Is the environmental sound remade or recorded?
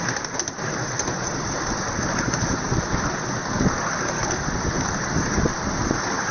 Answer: recorded